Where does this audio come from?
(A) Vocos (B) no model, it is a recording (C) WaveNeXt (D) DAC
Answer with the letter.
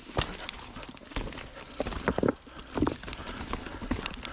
B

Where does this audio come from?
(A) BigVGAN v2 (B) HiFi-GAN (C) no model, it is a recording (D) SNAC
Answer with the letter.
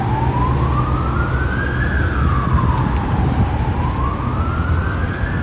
C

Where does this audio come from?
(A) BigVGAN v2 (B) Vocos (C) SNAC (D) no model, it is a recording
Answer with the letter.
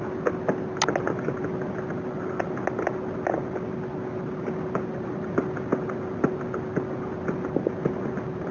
D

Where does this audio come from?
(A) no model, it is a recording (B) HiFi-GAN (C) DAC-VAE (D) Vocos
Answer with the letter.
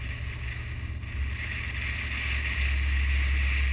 A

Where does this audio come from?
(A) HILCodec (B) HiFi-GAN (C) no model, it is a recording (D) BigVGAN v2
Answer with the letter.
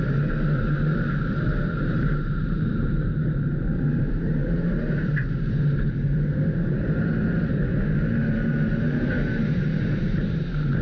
D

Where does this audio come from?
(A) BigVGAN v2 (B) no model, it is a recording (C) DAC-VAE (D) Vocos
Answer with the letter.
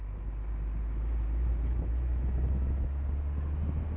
B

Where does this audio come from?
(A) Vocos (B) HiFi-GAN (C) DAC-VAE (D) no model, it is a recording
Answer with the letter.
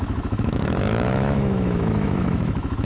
C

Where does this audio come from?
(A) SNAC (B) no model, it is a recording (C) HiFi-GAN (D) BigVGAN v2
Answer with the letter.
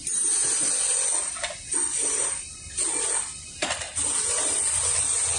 B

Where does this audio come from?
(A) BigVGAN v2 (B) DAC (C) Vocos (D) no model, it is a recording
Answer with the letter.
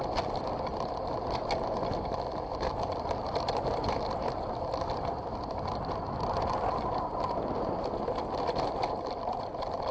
D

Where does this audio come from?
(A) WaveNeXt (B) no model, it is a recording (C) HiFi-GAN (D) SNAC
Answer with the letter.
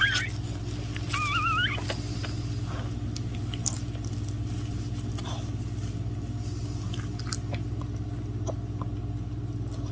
B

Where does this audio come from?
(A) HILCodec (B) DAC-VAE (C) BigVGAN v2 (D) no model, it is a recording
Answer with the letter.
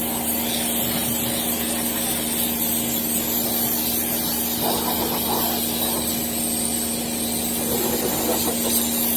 D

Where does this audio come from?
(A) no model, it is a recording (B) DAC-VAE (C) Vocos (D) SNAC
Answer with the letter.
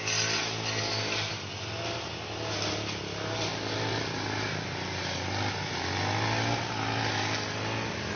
A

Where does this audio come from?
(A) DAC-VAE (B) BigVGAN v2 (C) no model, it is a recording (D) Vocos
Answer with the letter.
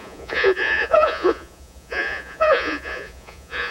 D